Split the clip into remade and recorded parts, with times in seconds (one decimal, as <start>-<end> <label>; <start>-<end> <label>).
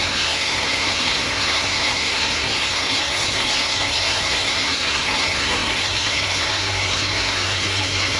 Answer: 0.0-8.2 remade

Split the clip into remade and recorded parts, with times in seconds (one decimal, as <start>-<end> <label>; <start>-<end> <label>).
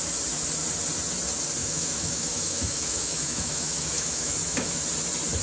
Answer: 0.0-1.6 recorded; 1.6-4.8 remade; 4.8-5.4 recorded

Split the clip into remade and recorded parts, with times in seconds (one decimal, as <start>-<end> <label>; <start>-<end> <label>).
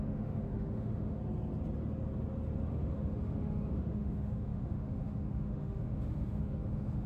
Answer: 0.0-1.2 remade; 1.2-2.7 recorded; 2.7-7.1 remade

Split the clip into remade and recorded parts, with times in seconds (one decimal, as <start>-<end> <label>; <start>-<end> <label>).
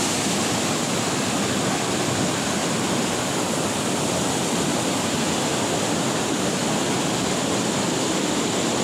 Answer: 0.0-8.8 recorded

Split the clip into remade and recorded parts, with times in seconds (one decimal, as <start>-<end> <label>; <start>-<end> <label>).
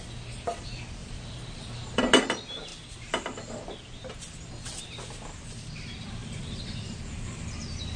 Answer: 0.0-1.0 recorded; 1.0-2.0 remade; 2.0-6.2 recorded; 6.2-7.6 remade; 7.6-8.0 recorded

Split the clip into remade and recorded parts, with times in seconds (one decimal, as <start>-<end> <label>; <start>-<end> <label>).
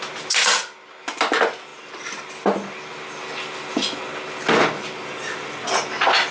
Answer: 0.0-6.3 recorded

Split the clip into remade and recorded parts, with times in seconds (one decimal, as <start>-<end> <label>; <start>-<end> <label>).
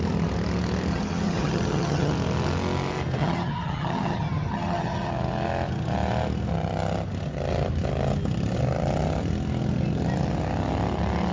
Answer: 0.0-0.9 recorded; 0.9-2.1 remade; 2.1-3.2 recorded; 3.2-5.1 remade; 5.1-11.3 recorded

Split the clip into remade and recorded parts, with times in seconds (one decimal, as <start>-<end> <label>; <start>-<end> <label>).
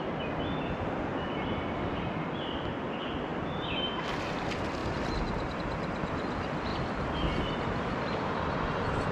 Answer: 0.0-9.1 recorded